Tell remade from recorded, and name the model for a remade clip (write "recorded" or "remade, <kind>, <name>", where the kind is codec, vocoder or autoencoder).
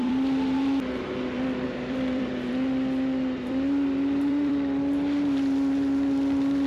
remade, vocoder, BigVGAN v2